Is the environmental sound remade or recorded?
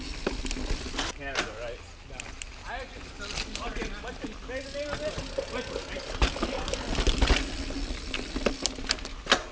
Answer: recorded